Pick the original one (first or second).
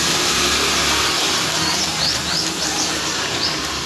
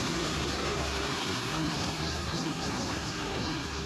first